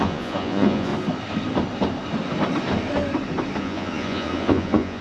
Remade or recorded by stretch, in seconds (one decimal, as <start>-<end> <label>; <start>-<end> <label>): 0.0-0.9 remade; 0.9-3.6 recorded; 3.6-5.0 remade